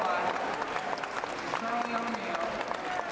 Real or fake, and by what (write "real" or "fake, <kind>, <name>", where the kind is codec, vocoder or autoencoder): real